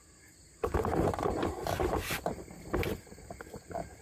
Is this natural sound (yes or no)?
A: no